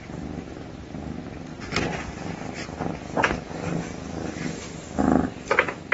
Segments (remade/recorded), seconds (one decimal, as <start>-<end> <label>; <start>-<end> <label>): 0.0-5.9 recorded